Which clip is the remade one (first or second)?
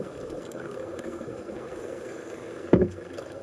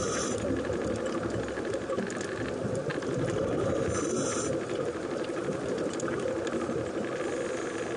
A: first